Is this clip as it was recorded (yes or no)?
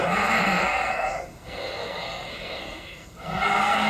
no